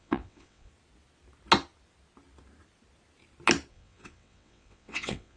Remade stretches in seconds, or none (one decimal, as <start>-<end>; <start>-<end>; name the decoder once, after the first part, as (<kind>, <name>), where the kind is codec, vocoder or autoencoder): 0.0-0.7 (vocoder, WaveNeXt); 3.7-5.4